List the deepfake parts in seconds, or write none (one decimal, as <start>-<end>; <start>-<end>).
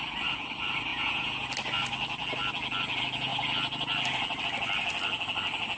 0.9-1.5